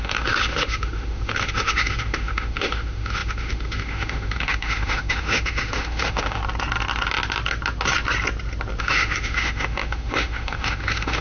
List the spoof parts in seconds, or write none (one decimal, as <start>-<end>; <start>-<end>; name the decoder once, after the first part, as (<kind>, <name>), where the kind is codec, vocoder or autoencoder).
0.0-6.4 (autoencoder, DAC-VAE); 8.8-11.2

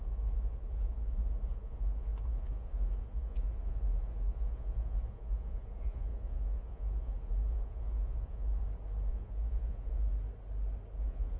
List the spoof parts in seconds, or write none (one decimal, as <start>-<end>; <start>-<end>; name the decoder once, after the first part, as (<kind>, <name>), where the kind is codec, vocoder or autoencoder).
0.0-8.6 (vocoder, Vocos); 9.1-10.1; 11.0-11.4

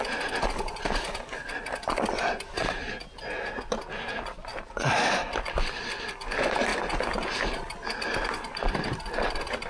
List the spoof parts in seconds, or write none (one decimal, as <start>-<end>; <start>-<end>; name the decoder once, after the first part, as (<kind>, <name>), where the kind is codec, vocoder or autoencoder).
none

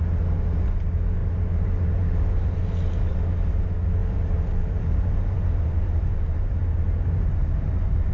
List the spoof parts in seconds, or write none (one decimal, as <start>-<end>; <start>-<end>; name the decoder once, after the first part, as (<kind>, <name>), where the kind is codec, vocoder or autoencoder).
1.2-3.2 (vocoder, BigVGAN v2); 4.0-8.1

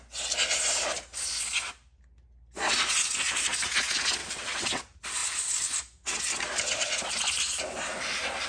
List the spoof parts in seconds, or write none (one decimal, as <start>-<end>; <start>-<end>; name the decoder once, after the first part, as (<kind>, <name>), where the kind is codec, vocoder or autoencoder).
4.2-4.8 (vocoder, WaveNeXt)

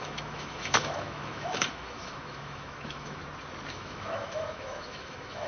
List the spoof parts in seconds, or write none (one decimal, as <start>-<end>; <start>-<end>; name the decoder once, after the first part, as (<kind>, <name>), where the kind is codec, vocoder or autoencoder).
0.0-3.2 (autoencoder, DAC-VAE); 3.7-5.5

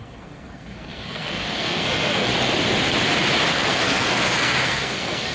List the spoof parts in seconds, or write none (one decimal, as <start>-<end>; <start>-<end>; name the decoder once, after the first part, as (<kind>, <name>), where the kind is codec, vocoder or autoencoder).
0.0-2.3 (codec, SNAC); 3.5-5.3

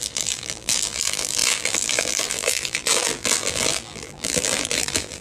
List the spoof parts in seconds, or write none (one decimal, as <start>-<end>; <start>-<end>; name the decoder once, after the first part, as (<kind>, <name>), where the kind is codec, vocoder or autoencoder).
0.0-5.2 (vocoder, BigVGAN v2)